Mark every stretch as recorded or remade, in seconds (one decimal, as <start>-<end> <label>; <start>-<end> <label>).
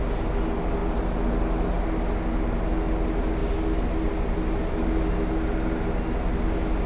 0.0-0.8 recorded; 0.8-1.3 remade; 1.3-6.9 recorded